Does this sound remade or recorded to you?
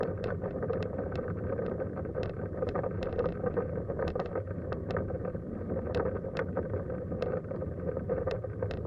remade